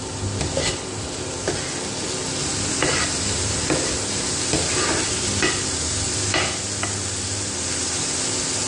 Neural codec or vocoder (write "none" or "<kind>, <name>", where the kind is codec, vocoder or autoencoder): none